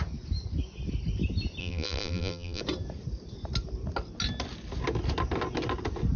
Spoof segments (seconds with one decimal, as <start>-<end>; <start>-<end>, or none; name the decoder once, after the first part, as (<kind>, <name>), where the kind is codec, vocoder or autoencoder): 1.6-2.6 (vocoder, BigVGAN v2)